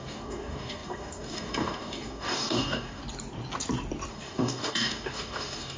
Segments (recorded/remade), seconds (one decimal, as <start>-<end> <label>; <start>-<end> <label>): 0.0-3.0 remade; 3.0-4.1 recorded; 4.1-5.8 remade